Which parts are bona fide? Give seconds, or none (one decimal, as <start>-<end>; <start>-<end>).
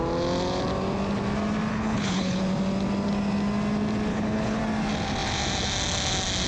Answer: 0.0-1.7; 2.4-4.1; 4.6-6.5